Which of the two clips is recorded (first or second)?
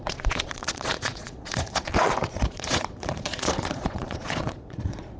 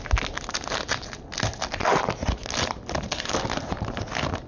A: second